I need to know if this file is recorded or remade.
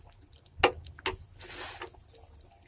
recorded